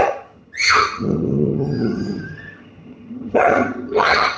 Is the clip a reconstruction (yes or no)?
yes